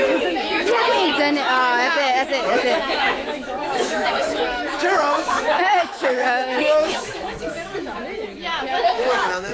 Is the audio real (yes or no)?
no